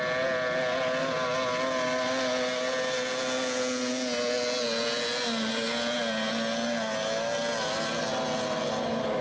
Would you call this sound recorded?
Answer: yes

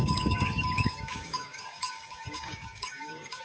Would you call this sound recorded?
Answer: no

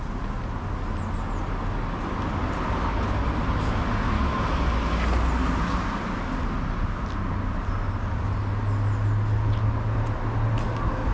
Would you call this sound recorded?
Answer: yes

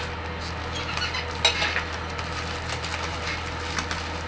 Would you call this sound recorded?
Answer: yes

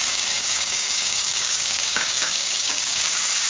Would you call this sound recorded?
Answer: no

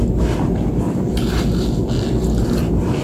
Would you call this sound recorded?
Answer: yes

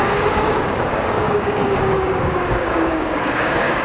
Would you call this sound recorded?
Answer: no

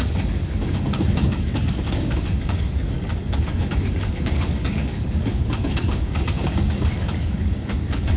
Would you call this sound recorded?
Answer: no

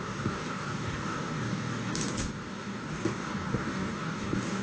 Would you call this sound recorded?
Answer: no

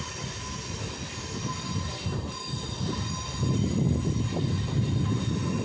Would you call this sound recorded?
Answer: yes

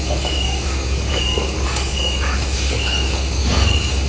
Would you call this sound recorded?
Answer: no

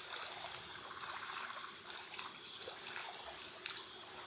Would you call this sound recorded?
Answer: yes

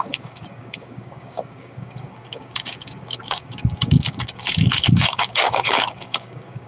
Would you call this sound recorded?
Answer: no